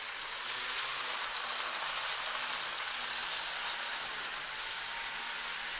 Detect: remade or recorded recorded